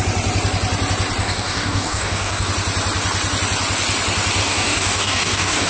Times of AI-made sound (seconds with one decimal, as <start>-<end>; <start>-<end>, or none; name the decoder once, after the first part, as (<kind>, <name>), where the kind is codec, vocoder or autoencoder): 1.2-2.5 (codec, DAC); 4.4-5.7